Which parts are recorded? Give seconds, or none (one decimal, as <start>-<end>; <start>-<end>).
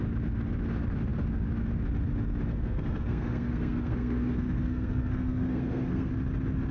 0.0-2.5; 6.1-6.7